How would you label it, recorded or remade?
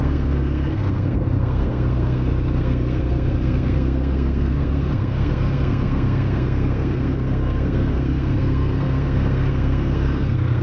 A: remade